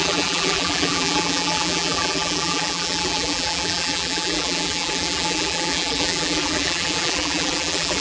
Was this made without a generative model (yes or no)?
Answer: no